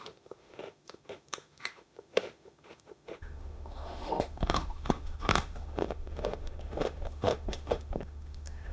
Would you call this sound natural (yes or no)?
no